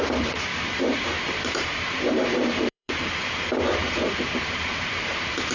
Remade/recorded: remade